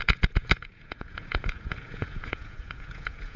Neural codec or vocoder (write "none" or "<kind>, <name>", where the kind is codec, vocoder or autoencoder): vocoder, Vocos